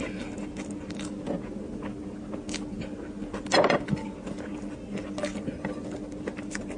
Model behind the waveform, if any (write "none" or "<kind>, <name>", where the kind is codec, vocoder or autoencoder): none